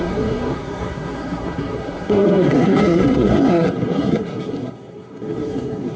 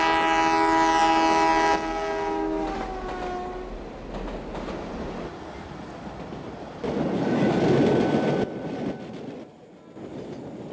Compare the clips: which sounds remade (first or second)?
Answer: first